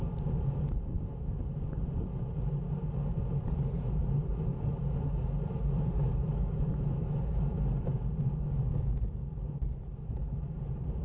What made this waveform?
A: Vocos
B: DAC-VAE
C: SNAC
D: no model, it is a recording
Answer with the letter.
D